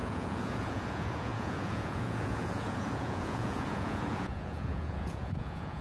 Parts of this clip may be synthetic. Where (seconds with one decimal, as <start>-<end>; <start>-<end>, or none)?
0.0-5.8